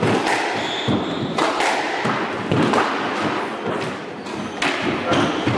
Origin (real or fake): real